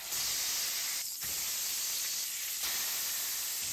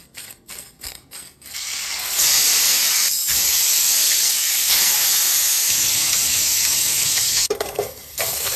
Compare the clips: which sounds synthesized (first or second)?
second